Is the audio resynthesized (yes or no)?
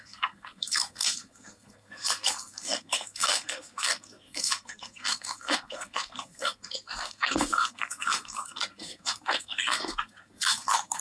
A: yes